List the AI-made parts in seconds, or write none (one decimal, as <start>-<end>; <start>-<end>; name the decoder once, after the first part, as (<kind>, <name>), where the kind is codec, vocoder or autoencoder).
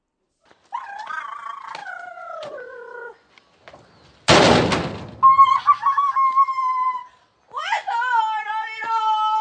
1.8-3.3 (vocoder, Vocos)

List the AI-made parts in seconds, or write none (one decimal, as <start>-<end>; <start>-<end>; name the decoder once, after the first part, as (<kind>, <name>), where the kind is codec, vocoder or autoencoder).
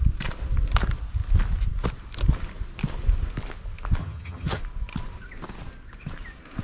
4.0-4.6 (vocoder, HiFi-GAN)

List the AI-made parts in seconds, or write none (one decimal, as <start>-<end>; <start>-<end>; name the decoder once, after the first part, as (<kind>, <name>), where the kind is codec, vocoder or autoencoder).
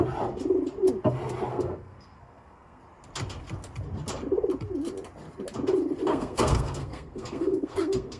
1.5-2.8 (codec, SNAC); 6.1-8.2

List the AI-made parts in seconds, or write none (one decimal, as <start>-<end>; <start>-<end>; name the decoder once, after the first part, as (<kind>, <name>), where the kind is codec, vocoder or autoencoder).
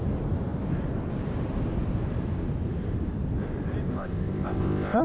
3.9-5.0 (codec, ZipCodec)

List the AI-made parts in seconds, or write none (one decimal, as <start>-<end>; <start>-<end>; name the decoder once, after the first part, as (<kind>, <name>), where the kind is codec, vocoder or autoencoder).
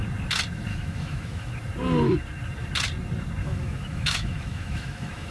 0.7-1.5 (autoencoder, DAC-VAE); 3.4-5.3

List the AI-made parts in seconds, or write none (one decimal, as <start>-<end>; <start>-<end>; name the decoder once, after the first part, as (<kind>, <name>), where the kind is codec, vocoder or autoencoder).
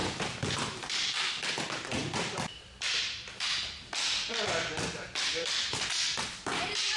0.0-1.5 (vocoder, BigVGAN v2); 2.0-6.2